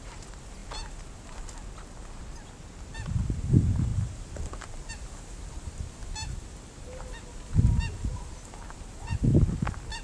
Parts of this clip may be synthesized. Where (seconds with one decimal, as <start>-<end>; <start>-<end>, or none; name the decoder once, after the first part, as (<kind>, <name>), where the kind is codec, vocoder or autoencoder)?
none